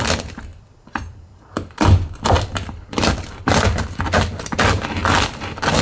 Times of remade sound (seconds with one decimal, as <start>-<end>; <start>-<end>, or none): 0.0-0.5; 4.0-5.0